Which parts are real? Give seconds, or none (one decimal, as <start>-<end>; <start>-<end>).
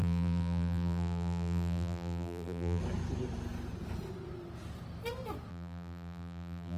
2.8-5.5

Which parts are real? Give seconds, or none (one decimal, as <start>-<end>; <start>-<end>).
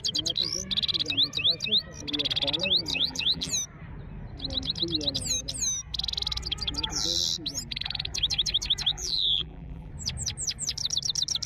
0.0-2.9; 3.5-8.9; 9.9-11.5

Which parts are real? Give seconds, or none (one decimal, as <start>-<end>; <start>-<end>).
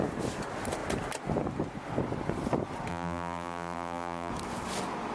0.0-2.9; 4.3-5.1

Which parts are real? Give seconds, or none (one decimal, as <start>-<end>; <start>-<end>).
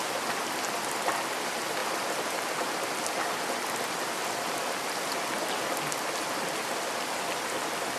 0.0-8.0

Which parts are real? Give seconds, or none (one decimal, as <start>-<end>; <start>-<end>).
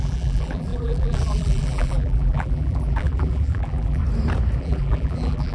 4.0-4.6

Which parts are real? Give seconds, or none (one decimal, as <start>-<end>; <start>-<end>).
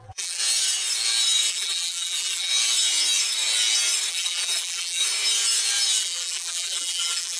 0.4-1.5; 2.5-4.1; 5.0-6.0